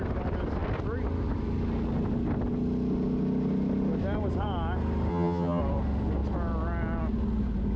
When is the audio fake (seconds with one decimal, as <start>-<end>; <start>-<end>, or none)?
5.1-5.6